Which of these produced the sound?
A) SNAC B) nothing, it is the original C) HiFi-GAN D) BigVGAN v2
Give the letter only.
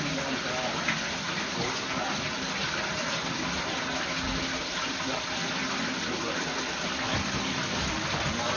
B